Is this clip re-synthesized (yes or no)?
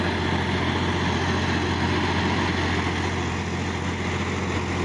no